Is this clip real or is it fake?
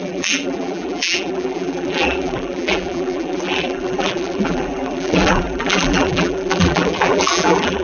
fake